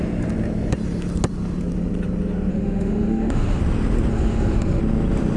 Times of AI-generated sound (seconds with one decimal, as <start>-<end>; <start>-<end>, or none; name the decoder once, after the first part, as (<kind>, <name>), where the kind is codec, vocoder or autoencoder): 2.5-3.6 (autoencoder, DAC-VAE); 4.1-4.8